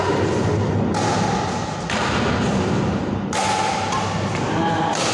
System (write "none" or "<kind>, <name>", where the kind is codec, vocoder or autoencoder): none